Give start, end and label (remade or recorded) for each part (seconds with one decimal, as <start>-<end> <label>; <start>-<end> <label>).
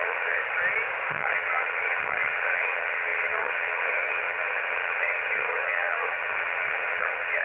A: 0.0-0.4 remade; 0.4-1.1 recorded; 1.1-7.4 remade